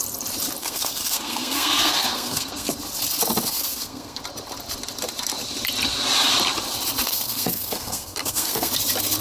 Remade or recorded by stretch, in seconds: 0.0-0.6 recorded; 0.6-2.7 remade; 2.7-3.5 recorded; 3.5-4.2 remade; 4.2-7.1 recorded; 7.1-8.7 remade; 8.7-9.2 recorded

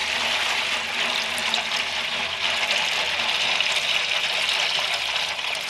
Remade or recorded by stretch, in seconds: 0.0-5.7 recorded

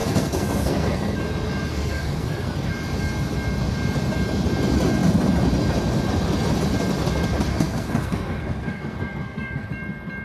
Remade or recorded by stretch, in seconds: 0.0-1.2 remade; 1.2-1.7 recorded; 1.7-2.7 remade; 2.7-7.5 recorded; 7.5-9.7 remade; 9.7-10.2 recorded